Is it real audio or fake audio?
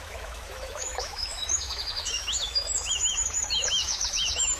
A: fake